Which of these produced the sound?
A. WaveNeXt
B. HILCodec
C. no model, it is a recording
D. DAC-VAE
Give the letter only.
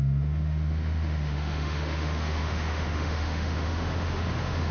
D